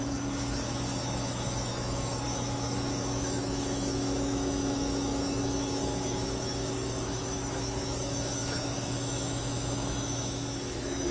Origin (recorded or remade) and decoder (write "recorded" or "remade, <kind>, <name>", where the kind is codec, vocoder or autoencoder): remade, autoencoder, DAC-VAE